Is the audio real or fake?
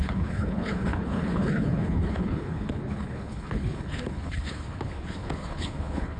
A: fake